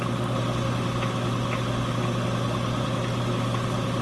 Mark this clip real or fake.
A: real